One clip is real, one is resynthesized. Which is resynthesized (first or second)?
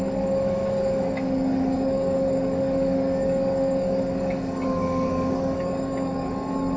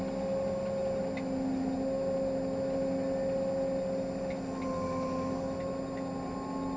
first